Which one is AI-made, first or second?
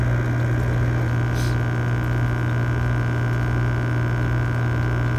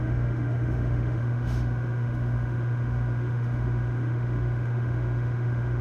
second